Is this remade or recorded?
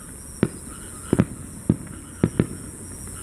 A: recorded